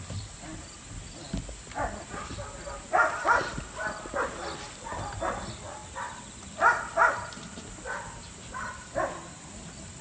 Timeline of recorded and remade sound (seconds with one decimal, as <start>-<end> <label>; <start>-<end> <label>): 0.0-10.0 recorded